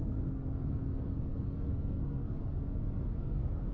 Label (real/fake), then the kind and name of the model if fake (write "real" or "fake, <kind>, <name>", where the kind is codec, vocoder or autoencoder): fake, codec, SNAC